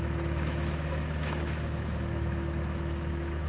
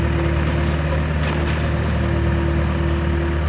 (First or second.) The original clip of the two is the second